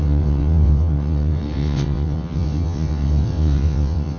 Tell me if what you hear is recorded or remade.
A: remade